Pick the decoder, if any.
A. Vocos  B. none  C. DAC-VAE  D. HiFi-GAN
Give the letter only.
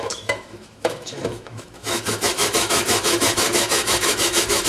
C